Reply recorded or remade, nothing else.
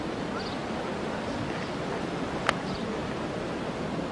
recorded